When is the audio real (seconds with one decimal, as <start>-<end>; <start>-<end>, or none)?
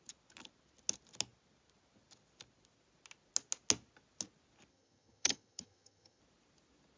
0.0-4.7; 6.2-7.0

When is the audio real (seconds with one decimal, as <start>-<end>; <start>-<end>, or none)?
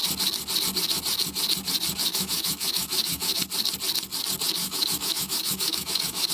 0.0-2.1; 3.4-4.6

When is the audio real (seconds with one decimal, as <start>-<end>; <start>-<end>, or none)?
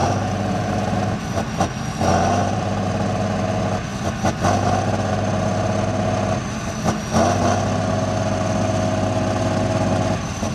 1.2-2.4; 2.9-10.5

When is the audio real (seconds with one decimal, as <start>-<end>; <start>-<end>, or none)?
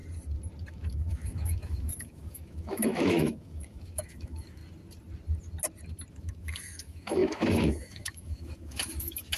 0.0-0.7; 4.6-6.1